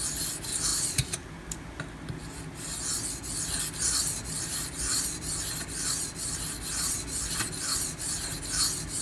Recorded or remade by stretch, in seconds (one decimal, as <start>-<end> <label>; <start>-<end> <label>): 0.0-0.7 recorded; 0.7-1.3 remade; 1.3-9.0 recorded